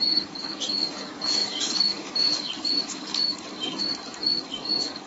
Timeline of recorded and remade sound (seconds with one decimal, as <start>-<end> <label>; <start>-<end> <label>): 0.0-5.1 remade